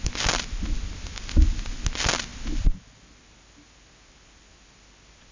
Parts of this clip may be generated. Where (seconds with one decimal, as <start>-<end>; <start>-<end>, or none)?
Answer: none